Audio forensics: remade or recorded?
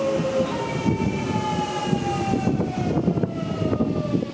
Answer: recorded